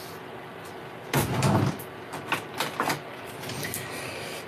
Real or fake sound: real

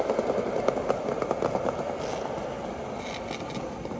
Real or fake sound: real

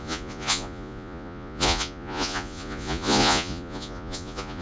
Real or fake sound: fake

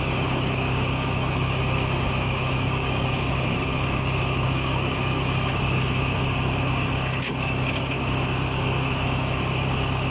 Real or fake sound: fake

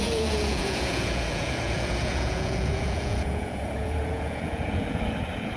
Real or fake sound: fake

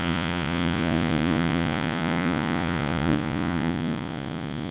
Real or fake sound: fake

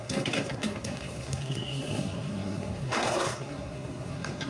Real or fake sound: fake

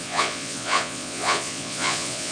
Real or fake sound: fake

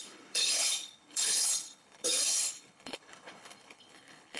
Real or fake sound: fake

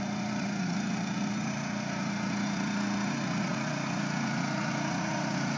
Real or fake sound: fake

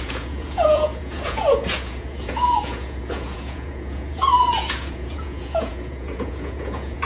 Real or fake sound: fake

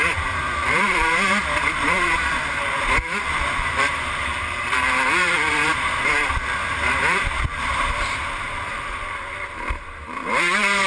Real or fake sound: fake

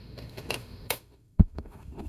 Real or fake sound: fake